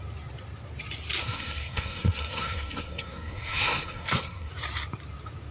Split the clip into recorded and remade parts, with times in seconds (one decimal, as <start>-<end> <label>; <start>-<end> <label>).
0.0-1.2 recorded; 1.2-4.5 remade; 4.5-5.5 recorded